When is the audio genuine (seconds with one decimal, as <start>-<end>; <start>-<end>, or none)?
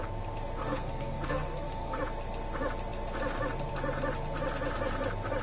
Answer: 0.0-0.6; 2.0-5.4